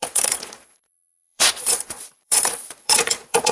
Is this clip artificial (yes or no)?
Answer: yes